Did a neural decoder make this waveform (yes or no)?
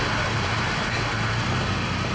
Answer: no